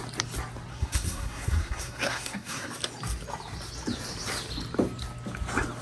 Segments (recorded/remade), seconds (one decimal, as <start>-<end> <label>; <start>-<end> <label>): 0.0-0.7 recorded; 0.7-2.7 remade; 2.7-5.8 recorded